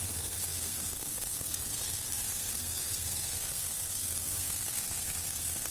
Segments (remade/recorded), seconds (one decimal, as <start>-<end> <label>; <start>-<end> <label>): 0.0-5.7 remade